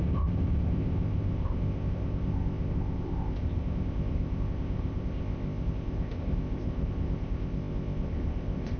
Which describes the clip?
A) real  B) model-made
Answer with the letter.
B